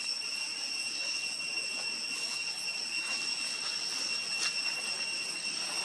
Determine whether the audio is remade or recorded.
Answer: recorded